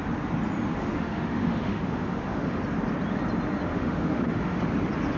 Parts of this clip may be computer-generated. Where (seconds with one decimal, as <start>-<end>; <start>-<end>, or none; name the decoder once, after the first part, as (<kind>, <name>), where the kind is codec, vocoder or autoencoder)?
0.7-2.6 (autoencoder, DAC-VAE); 3.7-4.6